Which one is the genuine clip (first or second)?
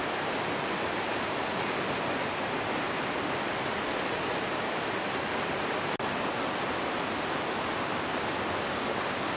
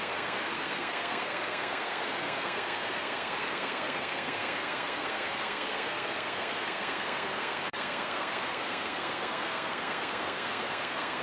first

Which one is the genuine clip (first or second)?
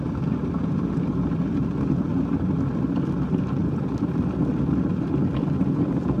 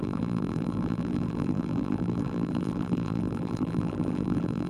first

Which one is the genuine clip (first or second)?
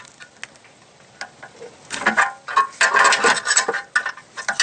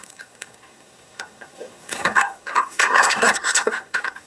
first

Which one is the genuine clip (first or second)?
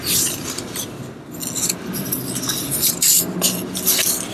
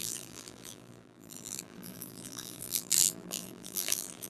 first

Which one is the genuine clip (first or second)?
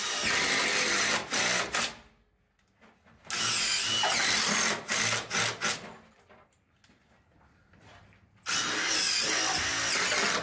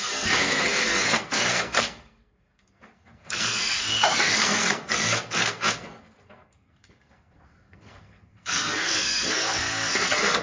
first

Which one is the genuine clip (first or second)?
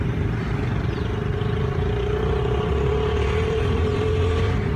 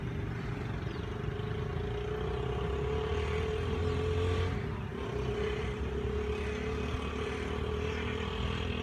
second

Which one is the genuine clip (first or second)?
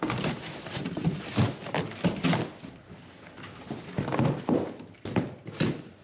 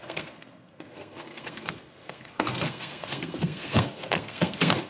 first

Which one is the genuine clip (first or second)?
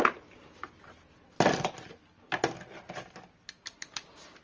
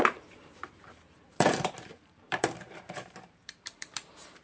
first